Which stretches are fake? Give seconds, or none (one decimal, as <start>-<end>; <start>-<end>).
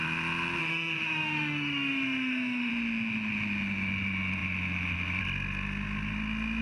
0.6-2.7